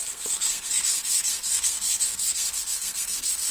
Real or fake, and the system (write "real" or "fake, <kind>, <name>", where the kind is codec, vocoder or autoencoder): fake, codec, SNAC